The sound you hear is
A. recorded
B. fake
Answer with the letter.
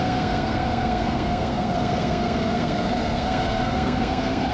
B